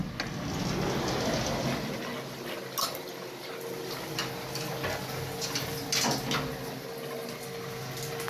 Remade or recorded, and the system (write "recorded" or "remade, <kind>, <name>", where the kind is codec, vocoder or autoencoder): recorded